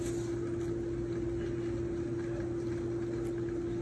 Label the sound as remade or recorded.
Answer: recorded